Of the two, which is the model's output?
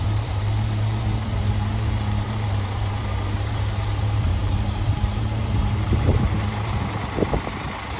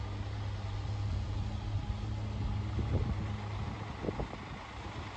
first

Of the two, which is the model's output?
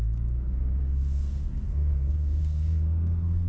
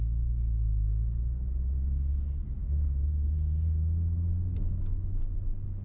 first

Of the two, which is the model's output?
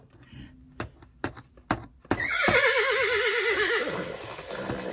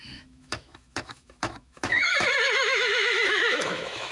second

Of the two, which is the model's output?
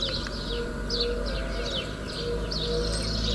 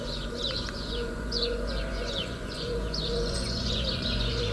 second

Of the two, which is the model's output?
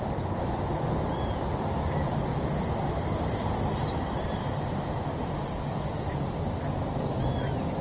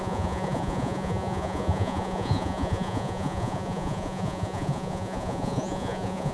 second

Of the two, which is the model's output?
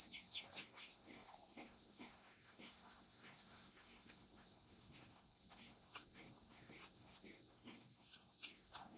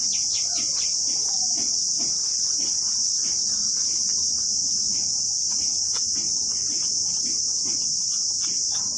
first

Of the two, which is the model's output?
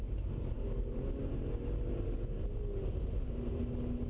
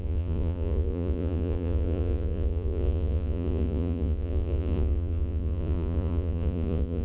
second